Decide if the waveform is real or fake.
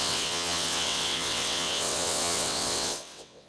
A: fake